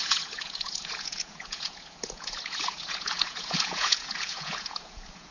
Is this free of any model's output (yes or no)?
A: no